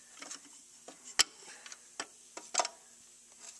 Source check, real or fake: real